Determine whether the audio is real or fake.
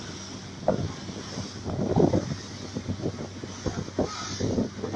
real